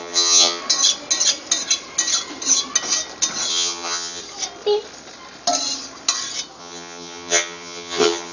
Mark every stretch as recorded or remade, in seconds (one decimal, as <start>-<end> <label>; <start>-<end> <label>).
0.0-0.6 remade; 0.6-3.5 recorded; 3.5-4.2 remade; 4.2-6.6 recorded; 6.6-8.3 remade